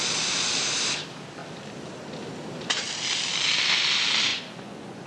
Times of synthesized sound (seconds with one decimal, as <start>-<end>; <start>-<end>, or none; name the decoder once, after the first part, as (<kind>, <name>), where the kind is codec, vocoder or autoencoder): 4.3-5.1 (vocoder, Vocos)